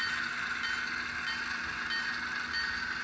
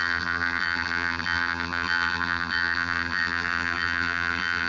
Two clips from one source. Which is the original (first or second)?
first